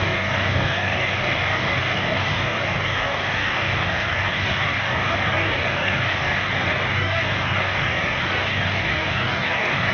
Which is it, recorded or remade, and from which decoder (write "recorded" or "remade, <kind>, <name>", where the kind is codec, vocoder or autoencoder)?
remade, codec, DAC